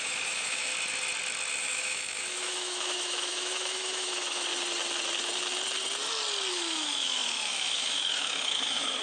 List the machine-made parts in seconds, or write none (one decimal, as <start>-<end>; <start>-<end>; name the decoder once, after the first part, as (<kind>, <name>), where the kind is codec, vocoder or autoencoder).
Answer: 0.0-0.7 (autoencoder, DAC-VAE); 1.6-4.5; 6.5-9.0